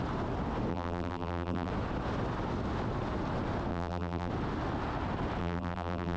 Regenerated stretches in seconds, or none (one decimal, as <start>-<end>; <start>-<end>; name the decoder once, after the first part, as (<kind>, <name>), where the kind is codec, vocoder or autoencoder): 0.7-1.7 (vocoder, BigVGAN v2); 3.7-4.3; 5.4-6.2